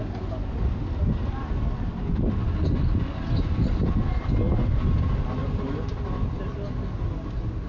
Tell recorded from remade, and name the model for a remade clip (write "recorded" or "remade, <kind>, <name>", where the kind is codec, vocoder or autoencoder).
recorded